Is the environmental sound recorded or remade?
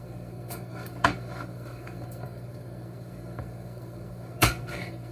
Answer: remade